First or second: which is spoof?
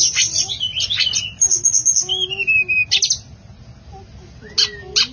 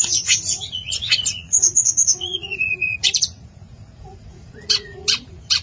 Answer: second